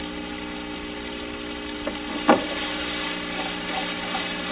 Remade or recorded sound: remade